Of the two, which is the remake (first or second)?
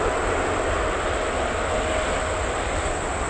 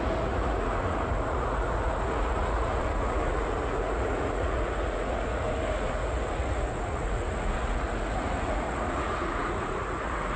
second